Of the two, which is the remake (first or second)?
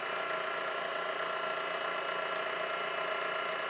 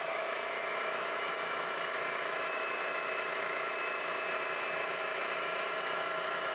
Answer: second